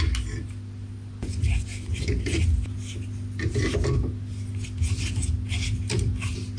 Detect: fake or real real